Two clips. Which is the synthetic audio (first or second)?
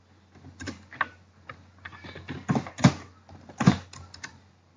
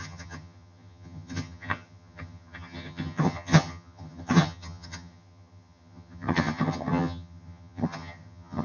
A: second